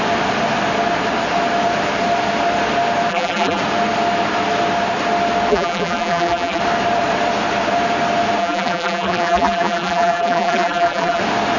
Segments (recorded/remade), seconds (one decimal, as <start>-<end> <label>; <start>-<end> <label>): 0.0-3.1 recorded; 3.1-3.6 remade; 3.6-5.5 recorded; 5.5-6.6 remade; 6.6-8.4 recorded; 8.4-11.2 remade; 11.2-11.6 recorded